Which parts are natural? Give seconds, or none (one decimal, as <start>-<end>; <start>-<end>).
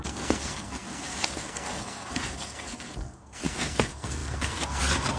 none